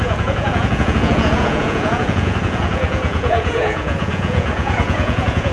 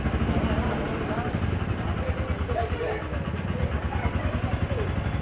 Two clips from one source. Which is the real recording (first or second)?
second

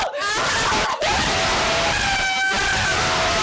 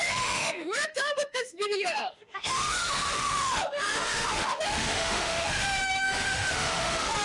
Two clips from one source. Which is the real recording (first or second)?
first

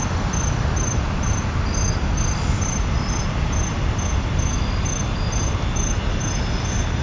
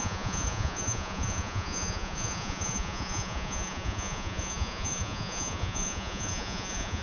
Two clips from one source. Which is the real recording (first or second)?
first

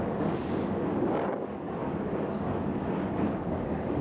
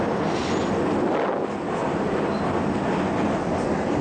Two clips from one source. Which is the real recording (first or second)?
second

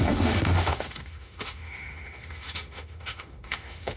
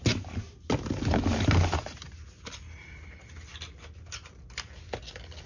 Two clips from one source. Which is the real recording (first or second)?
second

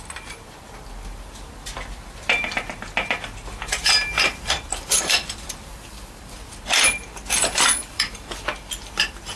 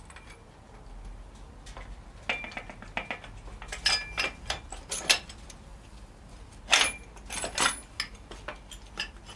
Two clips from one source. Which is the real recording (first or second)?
second